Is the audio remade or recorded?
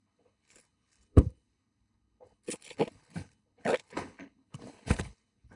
remade